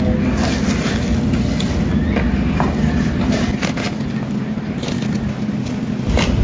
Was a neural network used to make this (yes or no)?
no